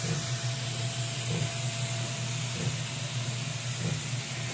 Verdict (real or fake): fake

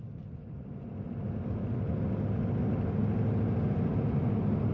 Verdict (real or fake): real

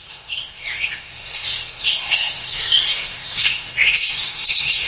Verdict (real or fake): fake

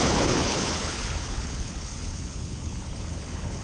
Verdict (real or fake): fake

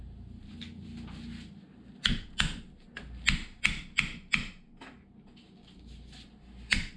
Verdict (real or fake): real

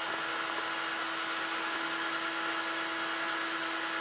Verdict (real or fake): real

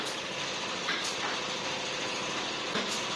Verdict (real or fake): real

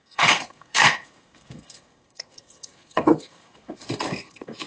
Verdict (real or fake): fake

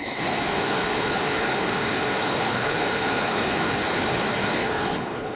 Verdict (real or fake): fake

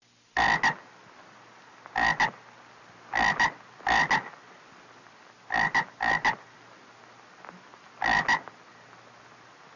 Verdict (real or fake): real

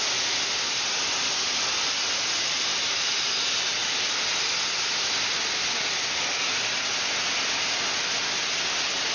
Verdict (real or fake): real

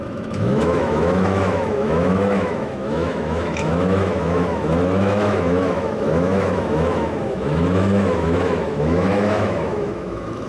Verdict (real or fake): fake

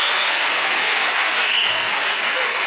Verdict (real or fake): fake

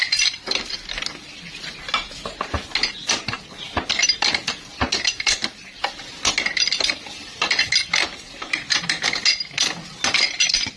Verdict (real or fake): real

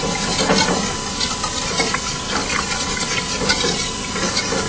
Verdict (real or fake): real